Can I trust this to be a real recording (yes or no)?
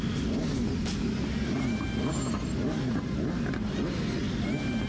yes